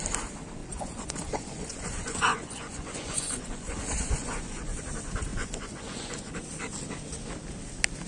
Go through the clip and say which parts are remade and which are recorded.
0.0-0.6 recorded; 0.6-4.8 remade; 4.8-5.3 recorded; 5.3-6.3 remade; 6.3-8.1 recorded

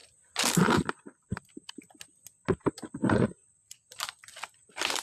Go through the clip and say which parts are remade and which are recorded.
0.0-5.0 recorded

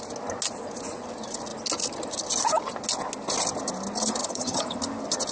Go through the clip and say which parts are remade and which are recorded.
0.0-4.2 recorded; 4.2-4.8 remade; 4.8-5.3 recorded